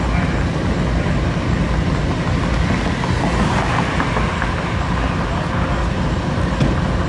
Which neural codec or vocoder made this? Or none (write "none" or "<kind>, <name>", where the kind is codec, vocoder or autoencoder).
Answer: none